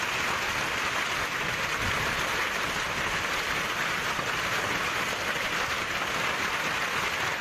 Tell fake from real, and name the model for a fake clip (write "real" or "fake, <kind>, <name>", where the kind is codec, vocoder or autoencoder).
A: real